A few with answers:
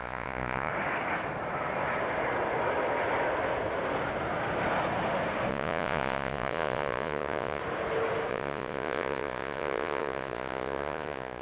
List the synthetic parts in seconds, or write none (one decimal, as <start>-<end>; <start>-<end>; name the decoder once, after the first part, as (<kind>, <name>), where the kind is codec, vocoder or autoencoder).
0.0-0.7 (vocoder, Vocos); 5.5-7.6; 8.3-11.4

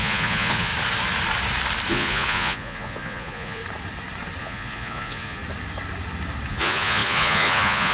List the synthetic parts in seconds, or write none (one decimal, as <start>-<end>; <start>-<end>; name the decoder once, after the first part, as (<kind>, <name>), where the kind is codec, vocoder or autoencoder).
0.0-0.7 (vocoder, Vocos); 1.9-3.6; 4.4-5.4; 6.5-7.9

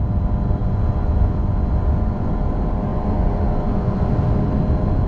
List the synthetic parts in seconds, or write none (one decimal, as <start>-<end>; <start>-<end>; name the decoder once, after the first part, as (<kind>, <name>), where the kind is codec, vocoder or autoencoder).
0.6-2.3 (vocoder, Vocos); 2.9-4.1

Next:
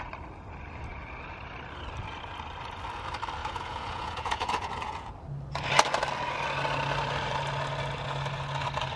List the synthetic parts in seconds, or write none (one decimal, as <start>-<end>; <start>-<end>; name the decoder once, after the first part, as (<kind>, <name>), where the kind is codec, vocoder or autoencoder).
3.4-5.1 (vocoder, Vocos)

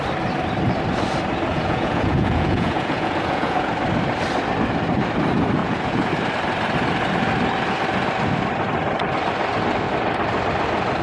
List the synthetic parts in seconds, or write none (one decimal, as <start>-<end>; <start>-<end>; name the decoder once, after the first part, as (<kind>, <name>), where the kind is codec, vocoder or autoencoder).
1.5-3.7 (vocoder, Vocos); 5.6-6.1

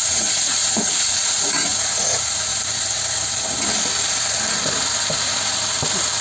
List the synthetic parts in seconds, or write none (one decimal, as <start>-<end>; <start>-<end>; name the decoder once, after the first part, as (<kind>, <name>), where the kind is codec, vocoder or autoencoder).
0.0-2.5 (vocoder, Vocos)